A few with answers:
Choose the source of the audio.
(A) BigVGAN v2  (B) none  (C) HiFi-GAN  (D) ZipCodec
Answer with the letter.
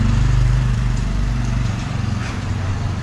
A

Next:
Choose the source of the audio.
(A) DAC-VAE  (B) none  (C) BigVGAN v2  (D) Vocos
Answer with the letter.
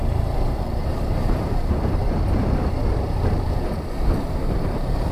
C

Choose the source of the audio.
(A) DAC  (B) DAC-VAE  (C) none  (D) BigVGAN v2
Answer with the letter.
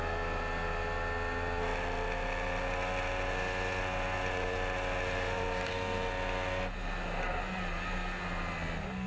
C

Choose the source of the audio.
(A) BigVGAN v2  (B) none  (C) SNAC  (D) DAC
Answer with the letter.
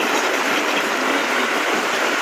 A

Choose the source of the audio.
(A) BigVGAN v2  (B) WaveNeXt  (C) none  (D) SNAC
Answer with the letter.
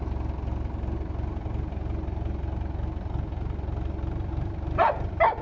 C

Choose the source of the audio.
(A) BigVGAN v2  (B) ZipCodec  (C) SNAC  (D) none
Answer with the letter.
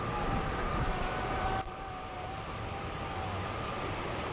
A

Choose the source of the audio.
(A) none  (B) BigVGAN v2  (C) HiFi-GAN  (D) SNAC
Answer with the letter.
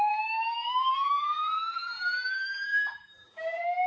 B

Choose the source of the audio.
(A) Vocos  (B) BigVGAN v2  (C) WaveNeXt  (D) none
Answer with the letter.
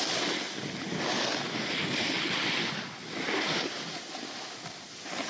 D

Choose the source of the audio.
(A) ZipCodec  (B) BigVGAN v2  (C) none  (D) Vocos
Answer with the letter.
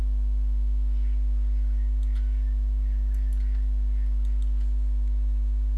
C